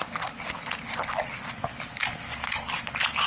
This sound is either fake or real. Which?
real